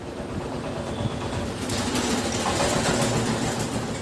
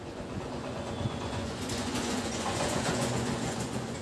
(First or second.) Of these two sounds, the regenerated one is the second